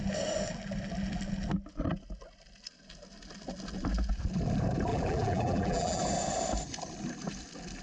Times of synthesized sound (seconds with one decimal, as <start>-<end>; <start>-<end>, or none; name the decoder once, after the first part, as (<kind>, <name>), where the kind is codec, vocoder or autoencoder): 4.9-6.0 (vocoder, BigVGAN v2)